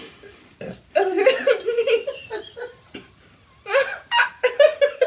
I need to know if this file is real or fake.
real